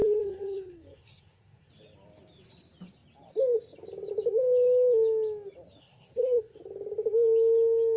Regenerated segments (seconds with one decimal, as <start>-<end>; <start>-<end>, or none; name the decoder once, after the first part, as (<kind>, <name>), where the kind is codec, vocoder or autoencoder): 0.0-1.7 (codec, SNAC); 5.8-6.6